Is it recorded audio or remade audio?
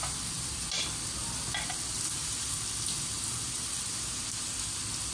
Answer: recorded